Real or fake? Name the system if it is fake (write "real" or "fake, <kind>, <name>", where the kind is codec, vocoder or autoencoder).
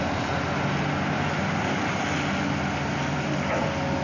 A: real